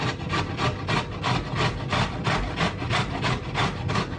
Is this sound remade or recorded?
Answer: recorded